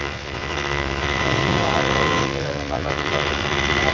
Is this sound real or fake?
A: fake